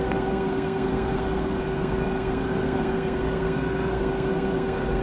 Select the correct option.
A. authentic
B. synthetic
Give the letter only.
B